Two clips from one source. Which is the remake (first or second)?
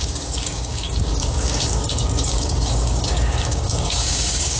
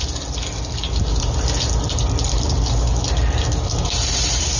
first